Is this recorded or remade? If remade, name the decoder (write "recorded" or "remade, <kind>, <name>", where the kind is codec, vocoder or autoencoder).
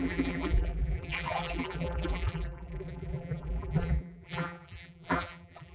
remade, vocoder, BigVGAN v2